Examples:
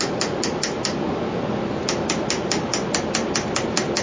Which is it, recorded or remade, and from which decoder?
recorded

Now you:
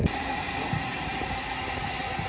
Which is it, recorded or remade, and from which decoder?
recorded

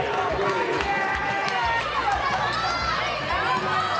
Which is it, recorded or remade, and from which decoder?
recorded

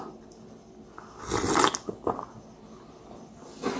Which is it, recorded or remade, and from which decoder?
recorded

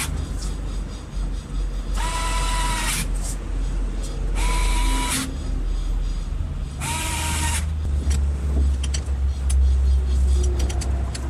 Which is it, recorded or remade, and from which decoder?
recorded